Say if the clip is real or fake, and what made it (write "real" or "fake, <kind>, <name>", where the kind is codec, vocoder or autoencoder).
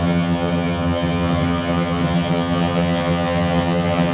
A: fake, vocoder, HiFi-GAN